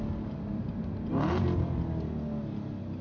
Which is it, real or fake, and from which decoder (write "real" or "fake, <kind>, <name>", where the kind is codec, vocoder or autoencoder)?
real